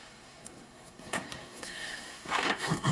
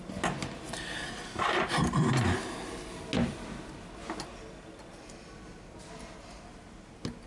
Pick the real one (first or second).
second